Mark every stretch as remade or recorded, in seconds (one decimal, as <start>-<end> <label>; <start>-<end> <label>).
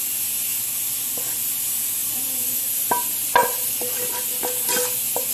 0.0-5.3 recorded